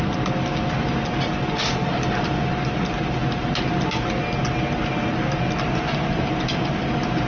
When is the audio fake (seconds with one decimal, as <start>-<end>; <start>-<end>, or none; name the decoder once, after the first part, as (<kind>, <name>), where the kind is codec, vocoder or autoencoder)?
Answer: none